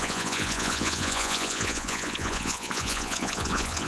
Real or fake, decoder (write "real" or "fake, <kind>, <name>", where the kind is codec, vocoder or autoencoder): fake, vocoder, Vocos